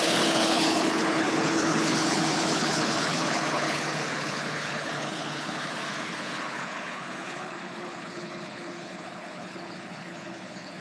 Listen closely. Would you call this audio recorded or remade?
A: remade